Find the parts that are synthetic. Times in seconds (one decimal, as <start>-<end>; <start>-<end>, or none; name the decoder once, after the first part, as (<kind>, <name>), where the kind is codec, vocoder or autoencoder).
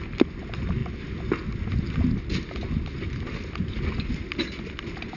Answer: none